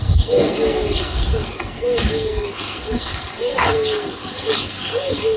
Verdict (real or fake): fake